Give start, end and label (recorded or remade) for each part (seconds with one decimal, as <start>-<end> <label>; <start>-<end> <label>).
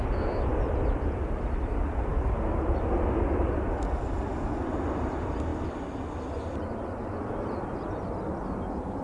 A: 0.0-9.0 recorded